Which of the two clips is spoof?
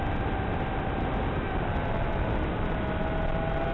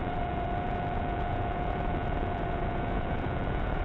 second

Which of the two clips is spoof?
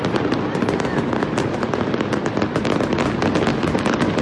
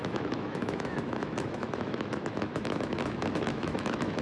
second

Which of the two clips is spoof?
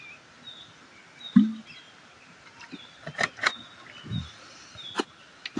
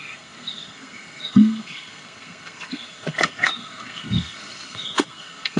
second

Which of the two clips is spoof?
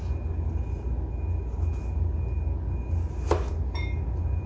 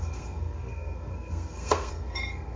second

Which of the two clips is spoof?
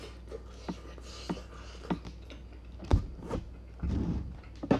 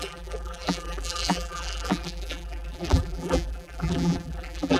second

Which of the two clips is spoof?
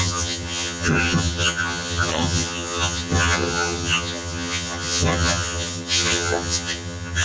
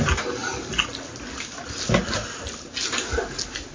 first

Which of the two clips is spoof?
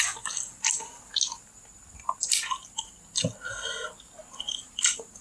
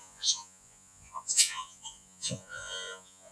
second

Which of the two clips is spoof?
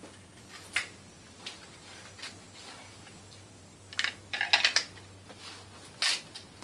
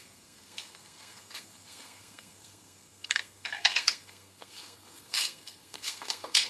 second